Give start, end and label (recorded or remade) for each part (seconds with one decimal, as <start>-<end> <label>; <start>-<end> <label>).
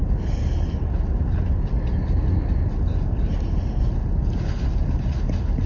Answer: 0.0-5.7 recorded